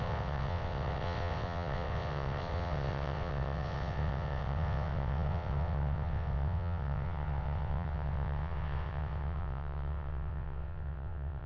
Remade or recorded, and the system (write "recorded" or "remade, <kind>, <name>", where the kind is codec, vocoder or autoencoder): remade, vocoder, WaveNeXt